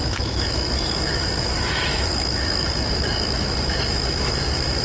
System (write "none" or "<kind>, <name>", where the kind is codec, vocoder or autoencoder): autoencoder, DAC-VAE